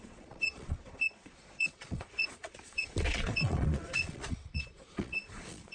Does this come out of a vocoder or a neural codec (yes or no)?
yes